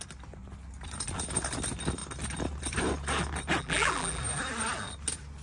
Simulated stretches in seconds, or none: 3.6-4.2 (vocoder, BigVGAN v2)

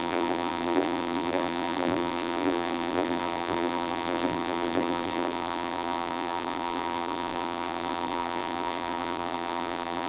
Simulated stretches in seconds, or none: 0.0-10.1 (vocoder, BigVGAN v2)

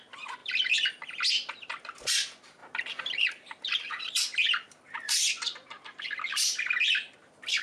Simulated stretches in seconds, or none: 0.0-2.6 (vocoder, BigVGAN v2); 3.2-7.6

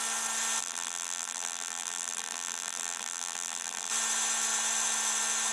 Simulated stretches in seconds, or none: 0.6-3.9 (vocoder, BigVGAN v2)